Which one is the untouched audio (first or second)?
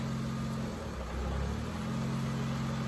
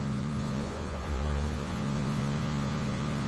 first